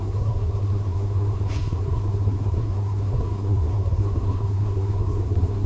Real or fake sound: fake